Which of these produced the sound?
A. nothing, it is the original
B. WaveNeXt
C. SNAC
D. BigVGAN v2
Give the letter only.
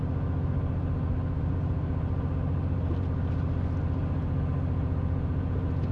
A